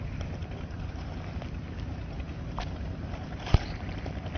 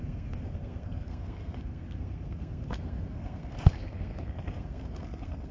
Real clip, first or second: first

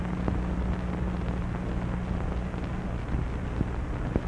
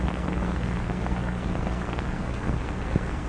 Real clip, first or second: first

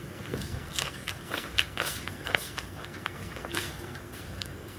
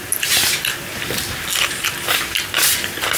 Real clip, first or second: second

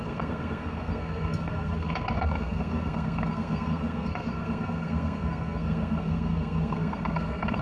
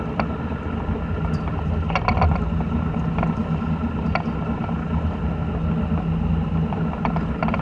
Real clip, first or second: second